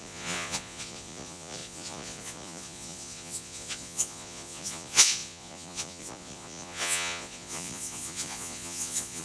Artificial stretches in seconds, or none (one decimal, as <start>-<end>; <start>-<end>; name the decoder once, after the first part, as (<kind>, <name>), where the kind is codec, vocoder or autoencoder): 0.0-9.2 (vocoder, Vocos)